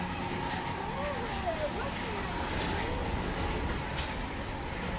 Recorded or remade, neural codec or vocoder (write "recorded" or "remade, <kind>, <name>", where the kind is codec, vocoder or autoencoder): recorded